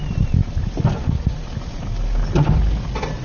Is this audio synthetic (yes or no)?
no